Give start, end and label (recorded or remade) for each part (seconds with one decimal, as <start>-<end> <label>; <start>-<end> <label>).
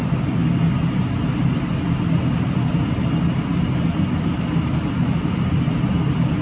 0.0-6.4 recorded